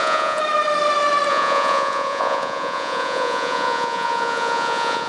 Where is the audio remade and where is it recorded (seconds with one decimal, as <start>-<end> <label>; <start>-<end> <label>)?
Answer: 0.0-0.4 remade; 0.4-1.3 recorded; 1.3-5.1 remade

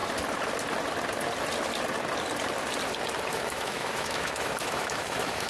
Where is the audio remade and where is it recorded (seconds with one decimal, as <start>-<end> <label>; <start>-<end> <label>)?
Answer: 0.0-3.3 recorded; 3.3-5.5 remade